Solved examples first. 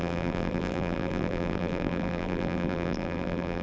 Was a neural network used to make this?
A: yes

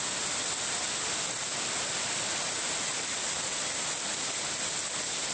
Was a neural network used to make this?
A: no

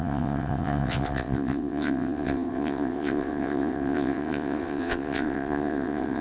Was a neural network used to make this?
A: yes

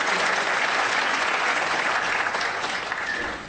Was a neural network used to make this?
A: yes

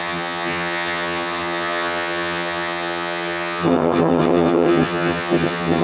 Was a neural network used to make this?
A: yes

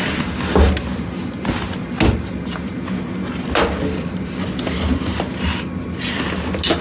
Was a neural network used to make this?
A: no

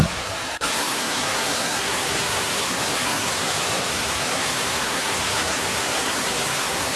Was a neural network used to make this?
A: yes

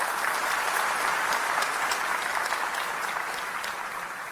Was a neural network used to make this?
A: no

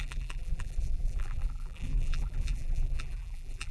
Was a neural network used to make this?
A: yes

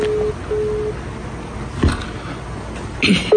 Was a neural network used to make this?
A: no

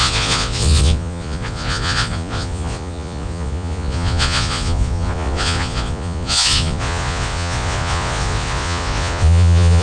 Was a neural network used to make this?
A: yes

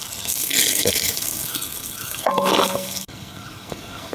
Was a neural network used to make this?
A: yes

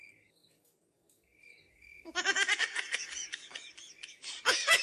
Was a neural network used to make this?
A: yes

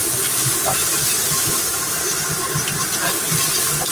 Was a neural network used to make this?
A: no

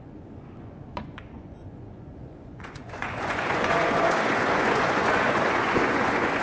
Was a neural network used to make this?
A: yes